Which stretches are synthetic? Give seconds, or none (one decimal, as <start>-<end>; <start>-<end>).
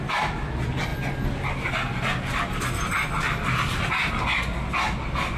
none